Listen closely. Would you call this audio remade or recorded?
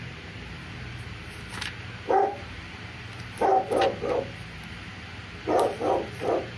remade